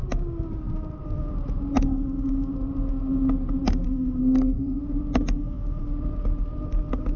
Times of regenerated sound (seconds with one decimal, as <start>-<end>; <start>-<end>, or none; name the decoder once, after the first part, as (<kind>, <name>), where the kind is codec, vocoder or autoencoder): 4.2-4.8 (codec, SNAC)